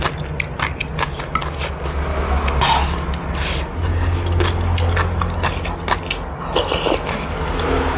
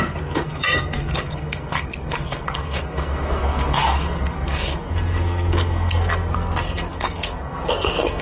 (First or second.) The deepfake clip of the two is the second